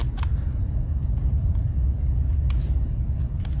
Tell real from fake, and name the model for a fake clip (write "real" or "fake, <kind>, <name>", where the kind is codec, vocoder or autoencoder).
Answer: real